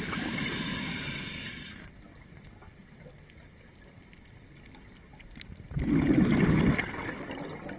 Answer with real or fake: real